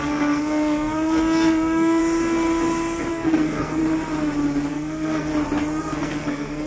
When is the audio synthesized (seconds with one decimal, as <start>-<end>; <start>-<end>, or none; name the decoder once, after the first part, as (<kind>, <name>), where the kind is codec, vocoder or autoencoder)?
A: 0.0-2.0 (codec, SNAC); 3.1-3.8; 4.7-5.3; 5.8-6.7